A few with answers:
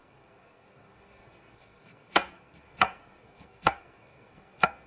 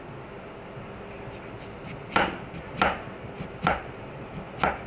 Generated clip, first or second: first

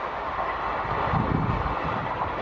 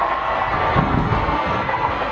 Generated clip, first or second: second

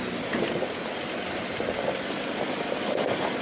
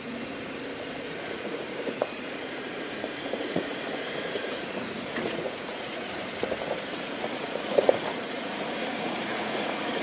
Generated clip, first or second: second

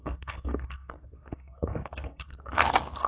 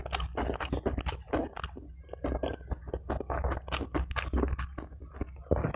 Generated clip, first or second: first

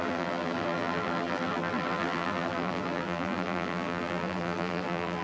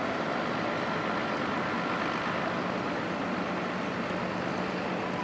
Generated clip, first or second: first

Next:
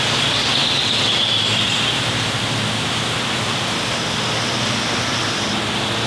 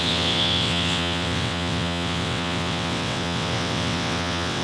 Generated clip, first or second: second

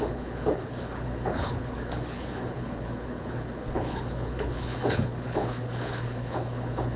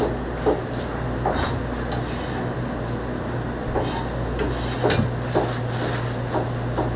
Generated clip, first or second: first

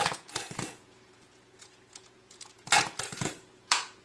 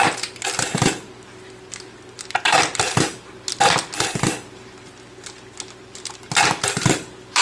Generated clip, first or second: first